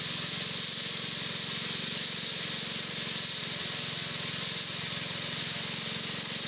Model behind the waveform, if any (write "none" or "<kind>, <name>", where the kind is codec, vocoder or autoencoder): none